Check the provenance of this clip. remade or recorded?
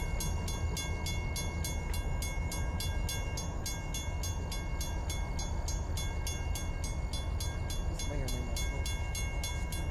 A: recorded